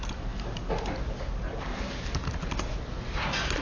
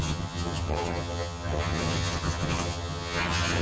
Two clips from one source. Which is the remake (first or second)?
second